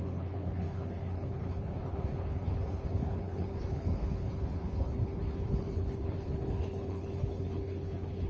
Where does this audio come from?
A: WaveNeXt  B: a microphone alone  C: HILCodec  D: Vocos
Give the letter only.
C